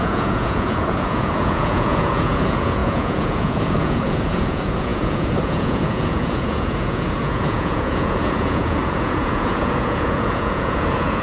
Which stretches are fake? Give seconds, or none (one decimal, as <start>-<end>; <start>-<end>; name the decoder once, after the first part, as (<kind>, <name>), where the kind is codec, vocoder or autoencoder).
0.0-11.2 (vocoder, Vocos)